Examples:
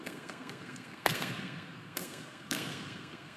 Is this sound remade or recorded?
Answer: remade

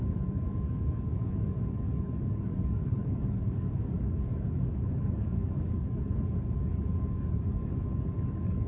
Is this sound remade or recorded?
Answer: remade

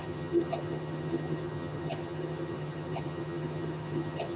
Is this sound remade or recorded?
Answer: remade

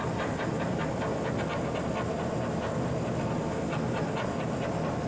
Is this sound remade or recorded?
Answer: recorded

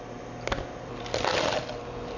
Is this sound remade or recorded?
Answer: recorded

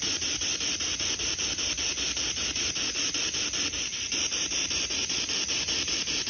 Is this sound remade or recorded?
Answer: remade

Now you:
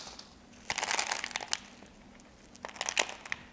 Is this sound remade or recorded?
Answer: recorded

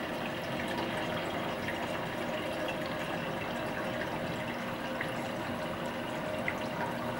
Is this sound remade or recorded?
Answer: recorded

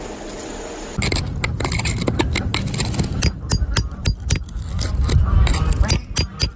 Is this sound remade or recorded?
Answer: recorded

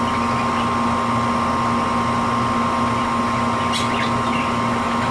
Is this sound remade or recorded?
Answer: recorded